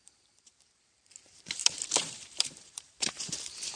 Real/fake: fake